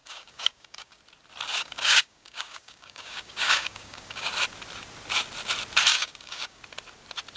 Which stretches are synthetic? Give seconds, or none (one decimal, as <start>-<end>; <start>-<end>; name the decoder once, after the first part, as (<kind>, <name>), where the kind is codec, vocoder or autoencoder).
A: 0.0-1.0 (codec, DAC); 1.5-4.3; 5.9-6.6